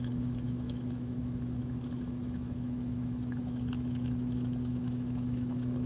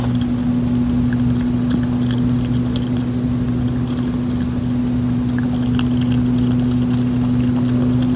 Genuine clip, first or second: second